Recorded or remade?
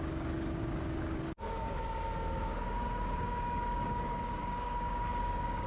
remade